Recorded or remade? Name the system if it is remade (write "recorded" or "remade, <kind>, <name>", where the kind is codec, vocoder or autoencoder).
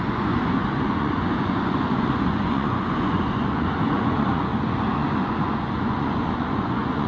remade, vocoder, Vocos